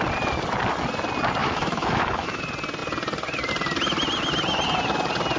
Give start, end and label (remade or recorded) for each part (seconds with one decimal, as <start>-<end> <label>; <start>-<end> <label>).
0.0-1.4 recorded; 1.4-2.4 remade; 2.4-5.4 recorded